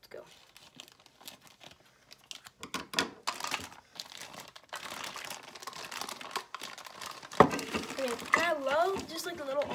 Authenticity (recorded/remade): recorded